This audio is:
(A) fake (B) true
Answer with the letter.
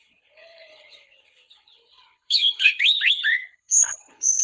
A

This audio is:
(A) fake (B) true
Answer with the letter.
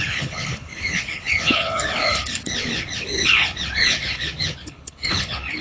A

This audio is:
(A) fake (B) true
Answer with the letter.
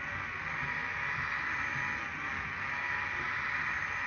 B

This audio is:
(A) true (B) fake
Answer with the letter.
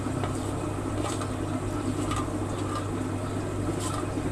A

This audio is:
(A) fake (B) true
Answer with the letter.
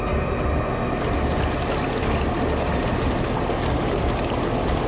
B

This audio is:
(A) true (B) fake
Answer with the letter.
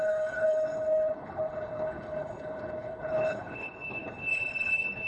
B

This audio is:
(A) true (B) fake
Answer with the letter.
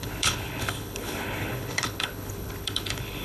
B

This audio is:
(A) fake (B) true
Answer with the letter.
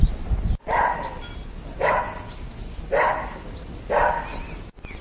B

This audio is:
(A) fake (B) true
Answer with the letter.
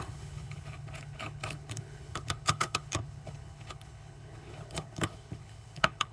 A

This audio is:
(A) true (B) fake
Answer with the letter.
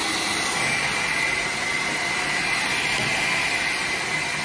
A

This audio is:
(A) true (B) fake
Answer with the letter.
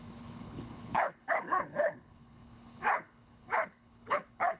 B